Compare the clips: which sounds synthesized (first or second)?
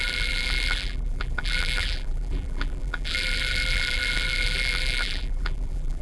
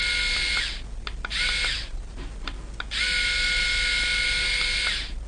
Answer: first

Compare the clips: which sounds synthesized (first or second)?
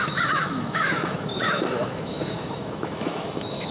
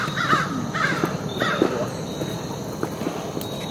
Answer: first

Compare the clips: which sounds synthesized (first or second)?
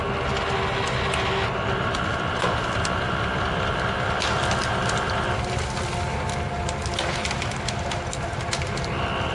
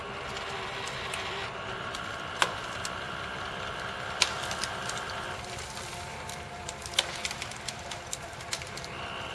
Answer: second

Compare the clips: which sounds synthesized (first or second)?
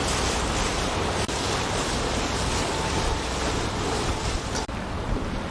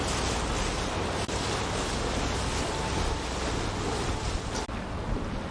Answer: first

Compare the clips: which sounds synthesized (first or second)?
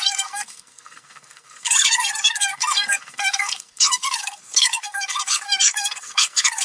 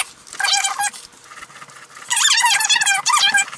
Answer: first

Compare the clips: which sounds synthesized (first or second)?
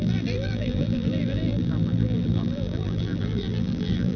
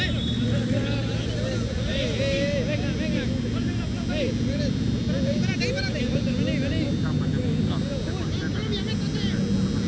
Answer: first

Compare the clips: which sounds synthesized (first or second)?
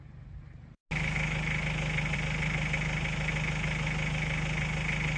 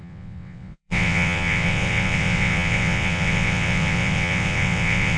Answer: second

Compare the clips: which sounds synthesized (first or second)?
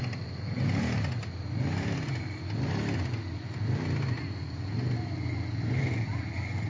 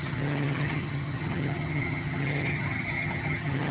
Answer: second